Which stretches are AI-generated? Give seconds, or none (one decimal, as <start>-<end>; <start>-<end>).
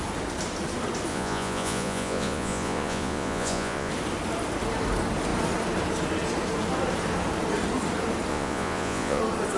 1.1-3.9; 8.3-9.2